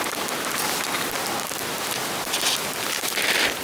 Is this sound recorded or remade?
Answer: remade